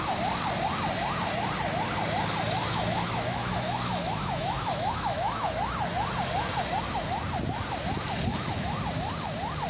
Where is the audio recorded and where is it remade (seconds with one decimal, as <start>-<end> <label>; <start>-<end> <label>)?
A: 0.0-2.6 recorded; 2.6-5.6 remade; 5.6-8.3 recorded; 8.3-8.8 remade; 8.8-9.7 recorded